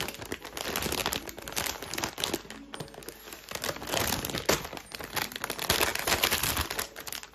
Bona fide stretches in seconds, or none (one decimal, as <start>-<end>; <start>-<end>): 0.0-7.3